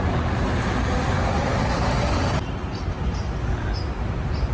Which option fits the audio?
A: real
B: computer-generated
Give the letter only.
A